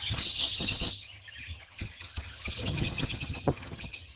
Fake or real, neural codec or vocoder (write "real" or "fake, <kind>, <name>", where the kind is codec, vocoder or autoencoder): fake, vocoder, HiFi-GAN